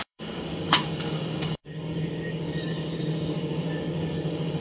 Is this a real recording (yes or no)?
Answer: no